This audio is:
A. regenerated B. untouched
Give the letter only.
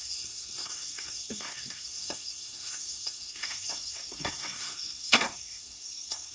A